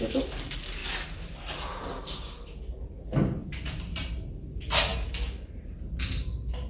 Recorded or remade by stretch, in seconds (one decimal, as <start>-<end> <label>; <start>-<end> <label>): 0.0-6.7 recorded